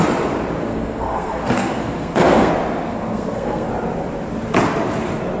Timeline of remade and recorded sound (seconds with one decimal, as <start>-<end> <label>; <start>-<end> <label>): 0.0-0.6 recorded; 0.6-2.5 remade; 2.5-2.9 recorded; 2.9-3.7 remade; 3.7-5.4 recorded